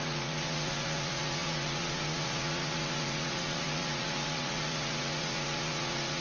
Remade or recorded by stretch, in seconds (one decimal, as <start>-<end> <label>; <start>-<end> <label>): 0.0-6.2 remade